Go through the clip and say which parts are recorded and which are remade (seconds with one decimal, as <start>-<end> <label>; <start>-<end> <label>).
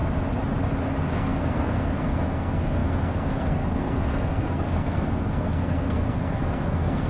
0.0-1.1 recorded; 1.1-7.1 remade